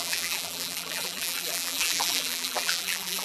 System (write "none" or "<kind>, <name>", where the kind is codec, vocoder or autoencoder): vocoder, BigVGAN v2